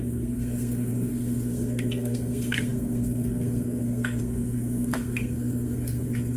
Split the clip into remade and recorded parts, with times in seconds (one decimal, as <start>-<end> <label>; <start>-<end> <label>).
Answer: 0.0-6.4 remade